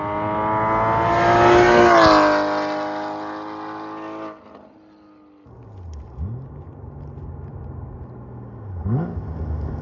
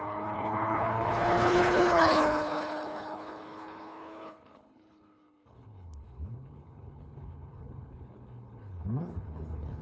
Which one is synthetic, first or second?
second